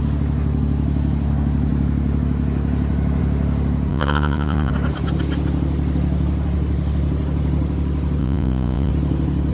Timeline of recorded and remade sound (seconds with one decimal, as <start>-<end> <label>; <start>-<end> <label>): 0.0-3.9 recorded; 3.9-4.7 remade; 4.7-8.2 recorded; 8.2-8.9 remade; 8.9-9.5 recorded